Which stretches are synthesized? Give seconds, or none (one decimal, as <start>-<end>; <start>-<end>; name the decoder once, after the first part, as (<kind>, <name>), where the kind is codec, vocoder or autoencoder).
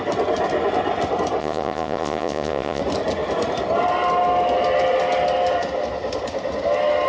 1.4-2.8 (vocoder, Vocos)